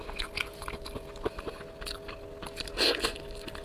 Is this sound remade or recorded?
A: recorded